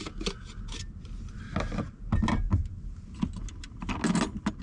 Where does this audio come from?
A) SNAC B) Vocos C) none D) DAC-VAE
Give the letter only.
C